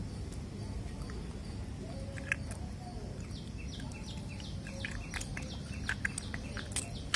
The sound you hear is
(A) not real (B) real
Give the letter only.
B